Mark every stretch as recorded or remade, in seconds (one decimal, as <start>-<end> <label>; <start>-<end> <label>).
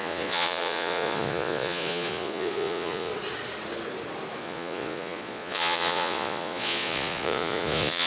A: 0.0-3.1 remade; 3.1-4.4 recorded; 4.4-8.1 remade